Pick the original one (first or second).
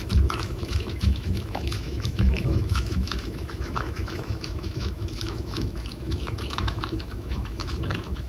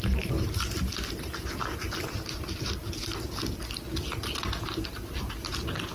second